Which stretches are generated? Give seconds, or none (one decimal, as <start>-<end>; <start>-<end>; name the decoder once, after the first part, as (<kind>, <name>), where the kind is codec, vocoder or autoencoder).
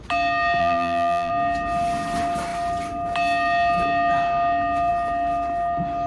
0.6-1.3 (vocoder, BigVGAN v2)